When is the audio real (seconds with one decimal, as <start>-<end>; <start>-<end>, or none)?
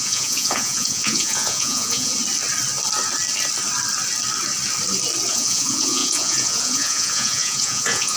2.1-5.3